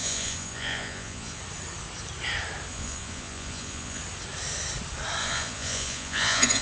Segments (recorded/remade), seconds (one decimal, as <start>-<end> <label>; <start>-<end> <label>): 0.0-1.4 remade; 1.4-2.7 recorded; 2.7-4.0 remade; 4.0-5.2 recorded; 5.2-6.6 remade